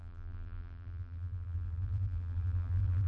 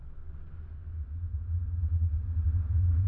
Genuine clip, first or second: second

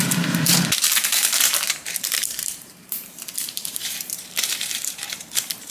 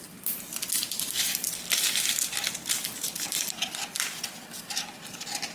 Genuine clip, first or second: second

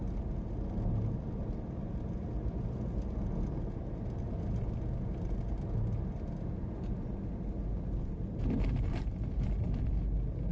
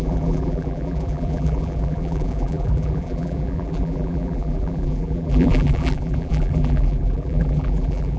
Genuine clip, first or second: first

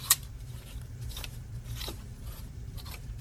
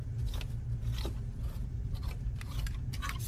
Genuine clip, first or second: second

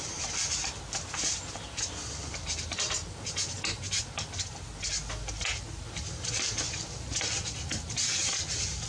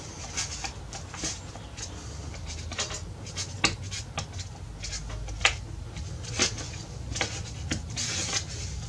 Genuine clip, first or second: second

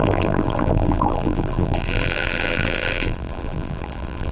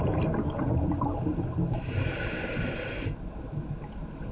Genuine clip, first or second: second